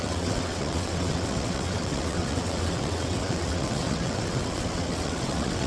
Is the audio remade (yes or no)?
yes